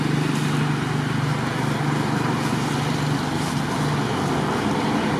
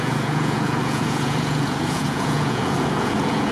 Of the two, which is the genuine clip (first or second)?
first